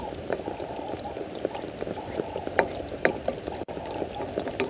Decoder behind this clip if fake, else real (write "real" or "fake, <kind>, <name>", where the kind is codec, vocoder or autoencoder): fake, vocoder, BigVGAN v2